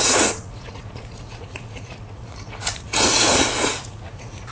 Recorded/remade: remade